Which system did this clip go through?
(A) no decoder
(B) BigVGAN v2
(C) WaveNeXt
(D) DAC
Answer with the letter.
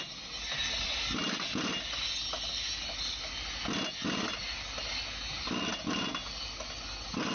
A